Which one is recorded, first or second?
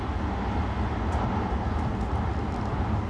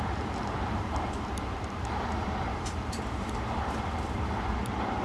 first